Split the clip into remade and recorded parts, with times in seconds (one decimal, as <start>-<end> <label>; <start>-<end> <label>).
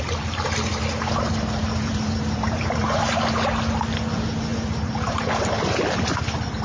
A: 0.0-0.7 recorded; 0.7-3.2 remade; 3.2-4.5 recorded; 4.5-5.4 remade; 5.4-6.6 recorded